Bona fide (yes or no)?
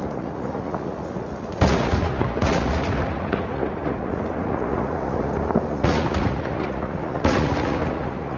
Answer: no